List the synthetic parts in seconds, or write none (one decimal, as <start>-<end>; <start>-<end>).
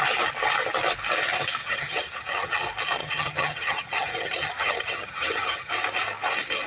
1.6-2.6; 3.0-5.7